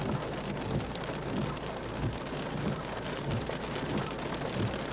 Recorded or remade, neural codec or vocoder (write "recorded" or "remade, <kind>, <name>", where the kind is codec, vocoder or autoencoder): recorded